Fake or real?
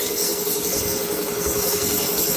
fake